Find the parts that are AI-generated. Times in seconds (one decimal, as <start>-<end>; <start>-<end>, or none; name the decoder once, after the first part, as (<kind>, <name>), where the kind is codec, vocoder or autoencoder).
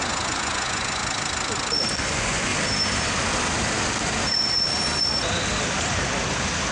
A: 0.0-1.0 (vocoder, Vocos); 2.0-2.5